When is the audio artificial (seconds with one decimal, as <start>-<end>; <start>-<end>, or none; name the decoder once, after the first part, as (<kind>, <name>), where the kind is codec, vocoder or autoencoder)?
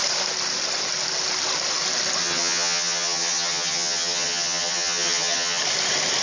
2.2-5.6 (vocoder, HiFi-GAN)